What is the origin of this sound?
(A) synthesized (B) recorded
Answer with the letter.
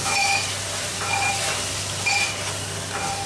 B